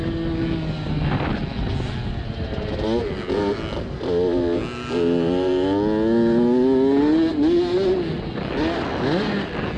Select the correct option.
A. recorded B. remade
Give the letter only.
A